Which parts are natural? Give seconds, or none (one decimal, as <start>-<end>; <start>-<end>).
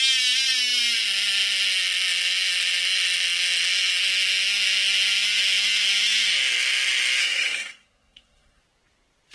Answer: 0.0-7.2; 8.6-9.3